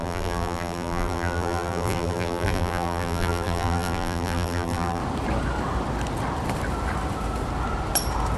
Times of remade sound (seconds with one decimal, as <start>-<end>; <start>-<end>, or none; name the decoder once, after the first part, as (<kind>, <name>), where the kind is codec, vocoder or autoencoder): 0.0-5.0 (vocoder, BigVGAN v2)